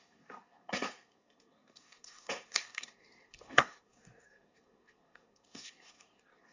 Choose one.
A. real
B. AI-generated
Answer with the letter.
B